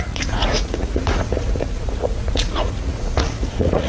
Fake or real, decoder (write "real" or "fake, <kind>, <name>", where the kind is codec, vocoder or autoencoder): fake, vocoder, Vocos